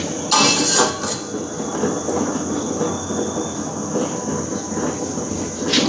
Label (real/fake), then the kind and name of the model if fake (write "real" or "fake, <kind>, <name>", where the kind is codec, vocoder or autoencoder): real